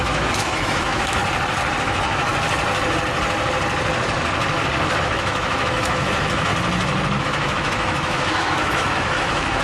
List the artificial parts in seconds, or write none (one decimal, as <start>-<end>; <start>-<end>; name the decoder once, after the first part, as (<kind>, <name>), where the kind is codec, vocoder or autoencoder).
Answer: 0.0-1.2 (autoencoder, DAC-VAE); 1.8-2.3; 5.0-6.5; 7.2-9.6